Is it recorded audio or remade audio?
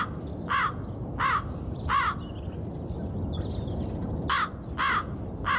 recorded